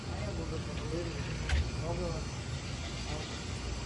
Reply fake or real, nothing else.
real